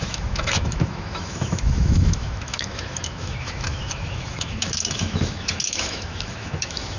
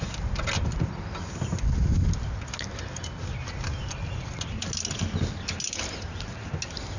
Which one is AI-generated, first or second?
first